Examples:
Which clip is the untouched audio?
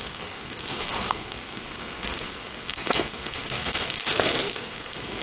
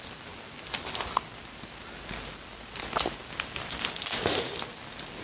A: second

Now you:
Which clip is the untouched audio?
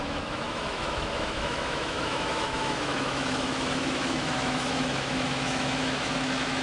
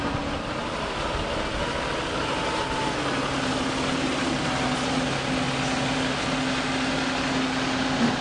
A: second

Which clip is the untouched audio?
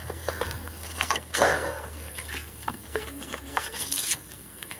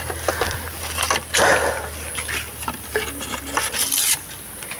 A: second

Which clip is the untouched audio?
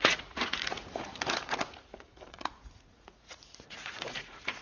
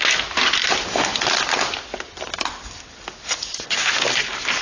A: second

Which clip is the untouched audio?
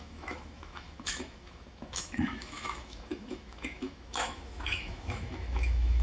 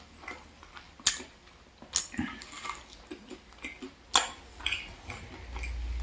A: second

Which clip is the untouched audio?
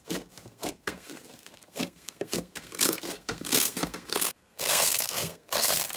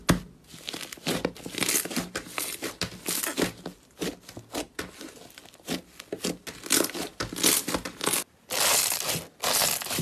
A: second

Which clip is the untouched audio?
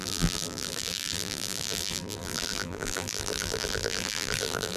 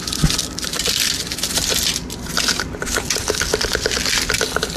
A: second